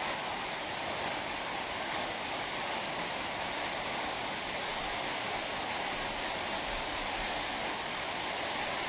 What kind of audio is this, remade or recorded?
recorded